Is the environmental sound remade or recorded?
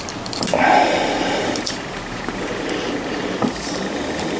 recorded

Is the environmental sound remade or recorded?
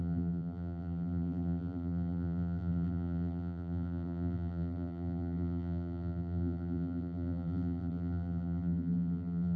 remade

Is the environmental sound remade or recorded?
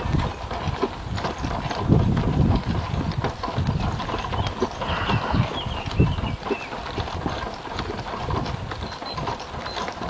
recorded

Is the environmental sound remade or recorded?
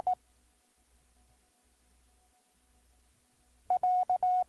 recorded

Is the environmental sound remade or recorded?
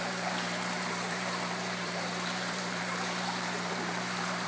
remade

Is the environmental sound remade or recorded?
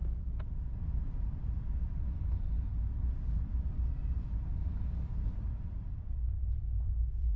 remade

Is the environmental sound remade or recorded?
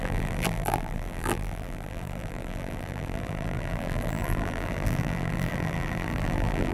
remade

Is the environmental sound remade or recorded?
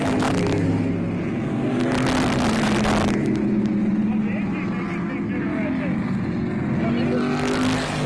recorded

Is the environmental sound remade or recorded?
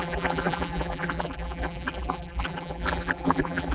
remade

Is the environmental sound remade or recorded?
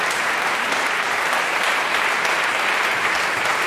remade